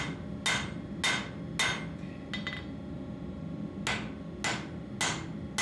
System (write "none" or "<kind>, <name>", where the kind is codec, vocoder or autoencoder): none